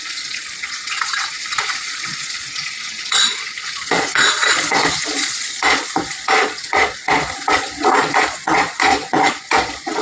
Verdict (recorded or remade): remade